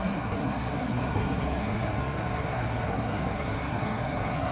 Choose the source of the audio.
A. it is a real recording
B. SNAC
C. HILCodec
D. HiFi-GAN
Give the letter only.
B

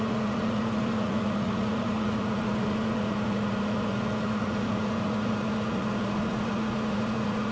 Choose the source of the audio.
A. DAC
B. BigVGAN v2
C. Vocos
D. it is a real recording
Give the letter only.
C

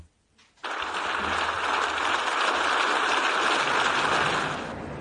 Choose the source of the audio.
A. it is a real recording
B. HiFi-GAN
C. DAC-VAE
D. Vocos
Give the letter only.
A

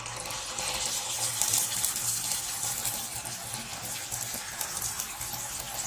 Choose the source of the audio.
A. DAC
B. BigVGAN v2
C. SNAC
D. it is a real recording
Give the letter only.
D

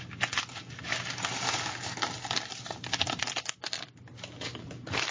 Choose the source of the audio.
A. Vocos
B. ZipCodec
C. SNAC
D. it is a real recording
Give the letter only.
D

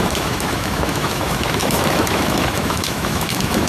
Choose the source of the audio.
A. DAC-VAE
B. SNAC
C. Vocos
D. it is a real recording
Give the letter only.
A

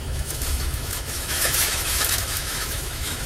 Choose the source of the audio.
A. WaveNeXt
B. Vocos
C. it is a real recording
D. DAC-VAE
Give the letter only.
D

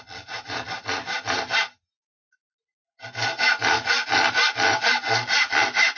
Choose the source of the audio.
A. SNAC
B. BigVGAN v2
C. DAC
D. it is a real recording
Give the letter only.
D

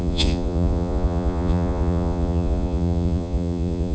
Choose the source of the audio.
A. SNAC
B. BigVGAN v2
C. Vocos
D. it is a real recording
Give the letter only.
C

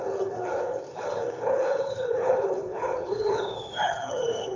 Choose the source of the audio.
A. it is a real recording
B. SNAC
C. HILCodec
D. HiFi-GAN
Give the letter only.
C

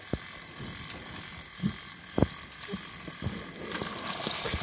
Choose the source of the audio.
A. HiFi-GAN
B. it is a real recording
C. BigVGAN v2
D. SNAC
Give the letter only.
B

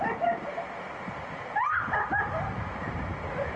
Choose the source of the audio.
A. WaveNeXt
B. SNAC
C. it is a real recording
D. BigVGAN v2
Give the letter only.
C